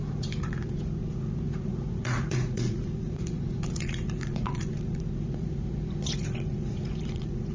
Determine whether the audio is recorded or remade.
remade